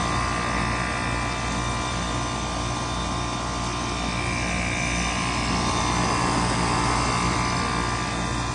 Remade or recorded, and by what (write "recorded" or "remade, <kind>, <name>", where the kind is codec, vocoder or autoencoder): recorded